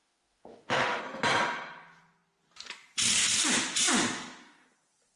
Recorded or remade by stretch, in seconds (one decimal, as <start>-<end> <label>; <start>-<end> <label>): 0.0-1.0 remade; 1.0-5.2 recorded

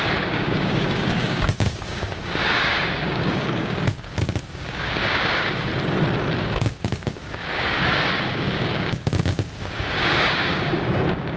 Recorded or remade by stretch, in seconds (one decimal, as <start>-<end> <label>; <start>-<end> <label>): 0.0-5.7 remade; 5.7-6.4 recorded; 6.4-11.4 remade

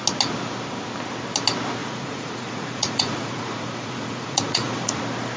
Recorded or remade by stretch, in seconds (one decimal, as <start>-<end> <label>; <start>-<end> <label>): 0.0-1.8 recorded; 1.8-5.0 remade; 5.0-5.4 recorded

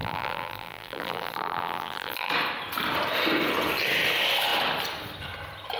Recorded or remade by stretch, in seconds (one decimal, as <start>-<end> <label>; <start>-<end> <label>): 0.0-2.3 remade; 2.3-5.8 recorded

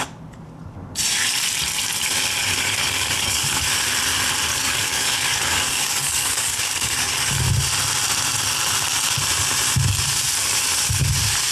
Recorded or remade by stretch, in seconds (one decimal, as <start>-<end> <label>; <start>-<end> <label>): 0.0-2.4 recorded; 2.4-3.7 remade; 3.7-4.5 recorded; 4.5-7.4 remade; 7.4-11.5 recorded

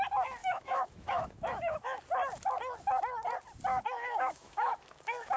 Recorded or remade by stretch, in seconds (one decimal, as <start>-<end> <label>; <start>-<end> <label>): 0.0-0.4 recorded; 0.4-2.0 remade; 2.0-3.7 recorded; 3.7-5.4 remade

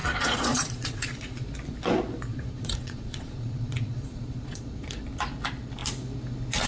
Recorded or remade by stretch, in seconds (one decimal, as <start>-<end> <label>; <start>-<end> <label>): 0.0-1.5 remade; 1.5-2.3 recorded; 2.3-5.0 remade; 5.0-6.7 recorded